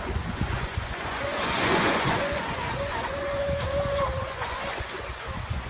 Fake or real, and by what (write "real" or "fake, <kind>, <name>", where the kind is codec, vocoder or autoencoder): fake, vocoder, Vocos